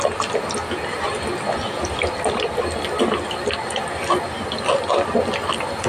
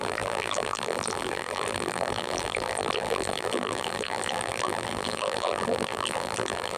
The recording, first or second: first